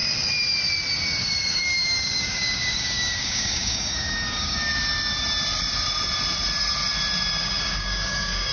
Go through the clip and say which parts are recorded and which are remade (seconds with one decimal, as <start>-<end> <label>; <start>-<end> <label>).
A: 0.0-1.2 recorded; 1.2-4.7 remade; 4.7-7.3 recorded; 7.3-8.5 remade